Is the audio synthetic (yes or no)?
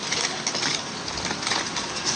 no